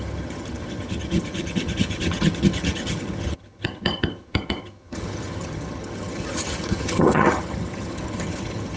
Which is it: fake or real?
fake